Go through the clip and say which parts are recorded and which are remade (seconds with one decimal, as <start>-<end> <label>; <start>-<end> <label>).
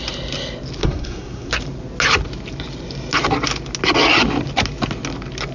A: 0.0-0.8 recorded; 0.8-1.5 remade; 1.5-5.5 recorded